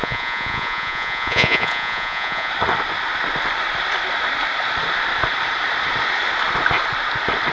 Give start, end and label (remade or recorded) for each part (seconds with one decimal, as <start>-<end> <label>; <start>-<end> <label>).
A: 0.0-2.5 remade; 2.5-7.5 recorded